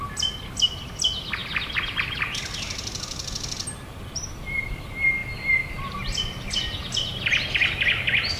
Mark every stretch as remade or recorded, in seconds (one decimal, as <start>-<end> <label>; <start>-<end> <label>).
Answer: 0.0-8.4 recorded